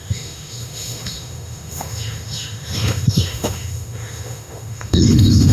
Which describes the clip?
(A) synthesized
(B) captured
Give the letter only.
A